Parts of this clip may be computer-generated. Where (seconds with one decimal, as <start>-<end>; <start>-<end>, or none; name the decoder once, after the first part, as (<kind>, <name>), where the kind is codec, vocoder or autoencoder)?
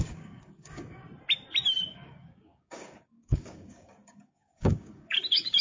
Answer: 0.0-1.0 (codec, DAC); 1.9-5.6